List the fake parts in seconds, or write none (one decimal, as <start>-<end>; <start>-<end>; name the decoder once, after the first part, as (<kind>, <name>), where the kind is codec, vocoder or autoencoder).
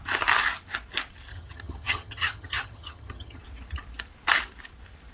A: 1.3-3.4 (vocoder, HiFi-GAN)